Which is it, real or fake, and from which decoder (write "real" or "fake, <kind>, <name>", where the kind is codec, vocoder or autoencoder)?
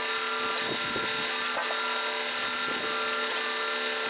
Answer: real